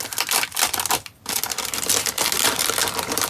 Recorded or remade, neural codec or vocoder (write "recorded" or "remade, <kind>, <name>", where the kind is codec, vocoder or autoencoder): recorded